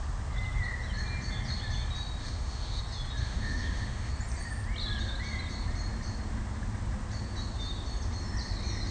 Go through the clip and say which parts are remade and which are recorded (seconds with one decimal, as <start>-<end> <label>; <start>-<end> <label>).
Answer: 0.0-2.2 recorded; 2.2-2.8 remade; 2.8-3.2 recorded; 3.2-4.1 remade; 4.1-8.9 recorded